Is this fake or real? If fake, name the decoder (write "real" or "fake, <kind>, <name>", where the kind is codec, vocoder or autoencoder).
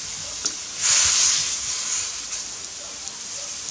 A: real